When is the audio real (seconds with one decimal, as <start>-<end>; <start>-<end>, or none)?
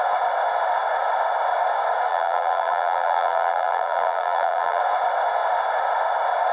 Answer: 0.0-2.1; 4.8-6.5